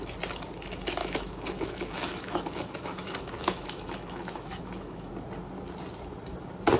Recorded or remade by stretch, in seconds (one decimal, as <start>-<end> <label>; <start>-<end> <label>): 0.0-1.0 recorded; 1.0-5.1 remade; 5.1-6.8 recorded